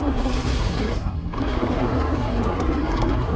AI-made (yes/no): yes